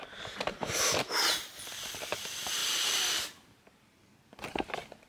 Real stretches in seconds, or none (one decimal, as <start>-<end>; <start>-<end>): 2.6-3.2